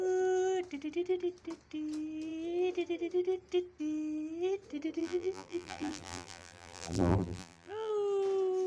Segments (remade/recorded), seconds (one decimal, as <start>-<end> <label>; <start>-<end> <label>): 0.0-5.0 recorded; 5.0-7.9 remade; 7.9-8.7 recorded